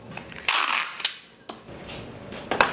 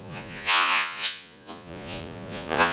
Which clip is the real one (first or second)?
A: first